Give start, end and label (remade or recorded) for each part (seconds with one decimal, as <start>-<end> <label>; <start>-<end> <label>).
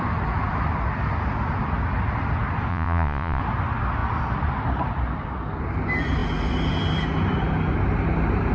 0.0-2.7 recorded; 2.7-3.4 remade; 3.4-8.5 recorded